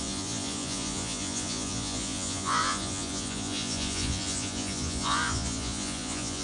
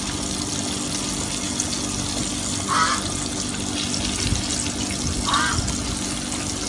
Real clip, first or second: second